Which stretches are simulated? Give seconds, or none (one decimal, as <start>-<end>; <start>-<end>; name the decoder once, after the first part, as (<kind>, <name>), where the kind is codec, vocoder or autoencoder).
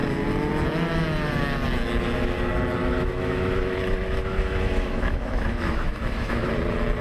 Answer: 2.8-6.5 (autoencoder, DAC-VAE)